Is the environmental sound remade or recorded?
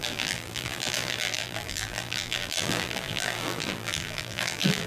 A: remade